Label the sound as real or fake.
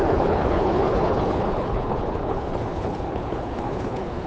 fake